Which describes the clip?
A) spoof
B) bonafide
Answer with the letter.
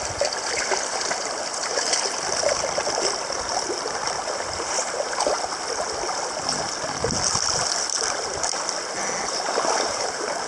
B